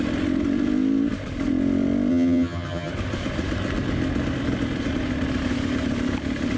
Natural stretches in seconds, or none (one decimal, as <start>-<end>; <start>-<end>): 0.0-2.1; 2.9-6.6